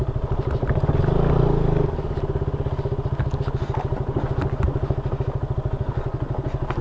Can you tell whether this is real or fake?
real